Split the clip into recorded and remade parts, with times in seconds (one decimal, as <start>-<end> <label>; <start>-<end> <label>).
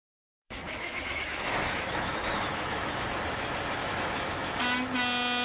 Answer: 0.0-3.2 remade; 3.2-3.8 recorded; 3.8-4.6 remade; 4.6-5.4 recorded